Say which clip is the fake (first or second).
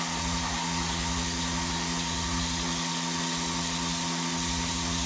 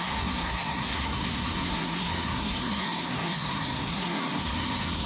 second